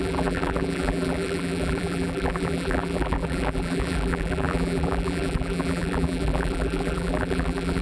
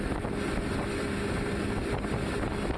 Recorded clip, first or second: second